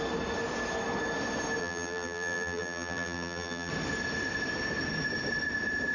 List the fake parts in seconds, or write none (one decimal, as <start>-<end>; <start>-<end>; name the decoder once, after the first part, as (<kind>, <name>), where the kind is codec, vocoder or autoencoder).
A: 1.6-3.7 (vocoder, BigVGAN v2)